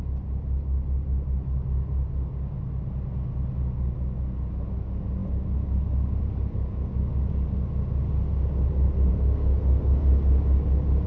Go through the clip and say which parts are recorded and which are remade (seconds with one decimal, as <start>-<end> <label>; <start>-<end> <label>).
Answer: 0.0-9.1 recorded; 9.1-10.0 remade; 10.0-11.1 recorded